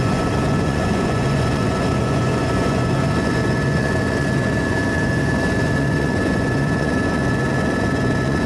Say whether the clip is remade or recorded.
remade